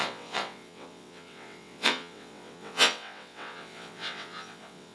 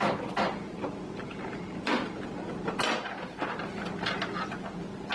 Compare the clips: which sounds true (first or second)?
second